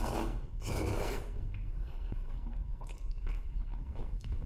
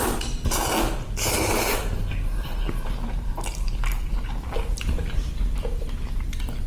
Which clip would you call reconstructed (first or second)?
first